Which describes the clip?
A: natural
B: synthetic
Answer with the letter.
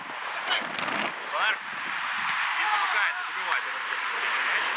A